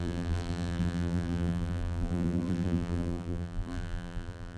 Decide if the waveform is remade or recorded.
remade